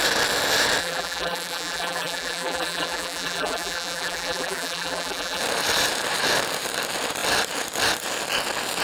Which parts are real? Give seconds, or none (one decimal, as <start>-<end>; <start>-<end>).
0.0-0.8; 5.4-8.8